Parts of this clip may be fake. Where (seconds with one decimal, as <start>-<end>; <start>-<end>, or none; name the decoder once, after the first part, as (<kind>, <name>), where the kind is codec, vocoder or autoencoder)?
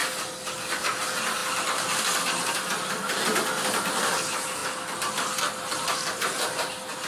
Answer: none